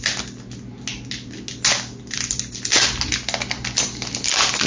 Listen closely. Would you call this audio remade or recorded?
recorded